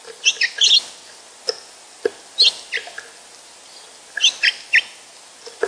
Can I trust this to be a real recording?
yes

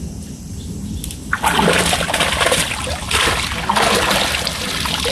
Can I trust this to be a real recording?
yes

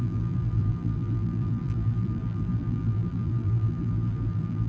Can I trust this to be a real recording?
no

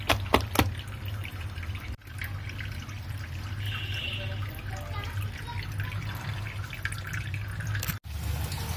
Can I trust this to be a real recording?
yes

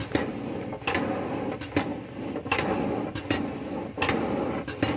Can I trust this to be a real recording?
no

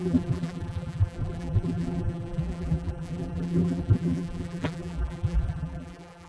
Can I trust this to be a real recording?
no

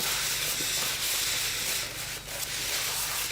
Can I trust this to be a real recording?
yes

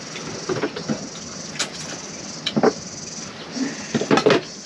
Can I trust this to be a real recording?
yes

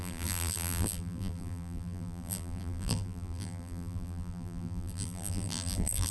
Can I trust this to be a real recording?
no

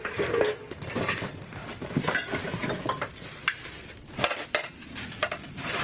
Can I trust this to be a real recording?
yes